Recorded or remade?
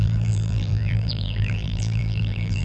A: remade